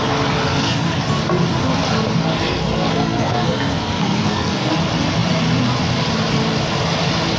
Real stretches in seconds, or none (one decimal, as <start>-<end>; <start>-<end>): 0.0-0.5; 1.0-2.3; 4.7-7.4